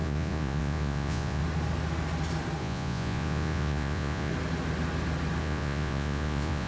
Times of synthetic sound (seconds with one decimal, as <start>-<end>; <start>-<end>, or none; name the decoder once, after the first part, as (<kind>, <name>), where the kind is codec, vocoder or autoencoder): 0.0-1.4 (vocoder, Vocos); 2.6-4.3; 5.4-6.7